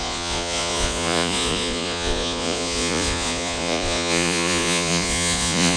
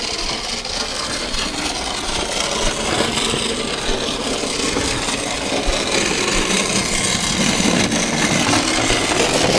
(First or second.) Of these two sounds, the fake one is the first